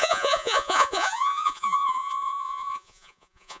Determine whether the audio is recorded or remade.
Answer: remade